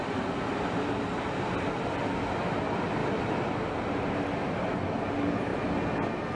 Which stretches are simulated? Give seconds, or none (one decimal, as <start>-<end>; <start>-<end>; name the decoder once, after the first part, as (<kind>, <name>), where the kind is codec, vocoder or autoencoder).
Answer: none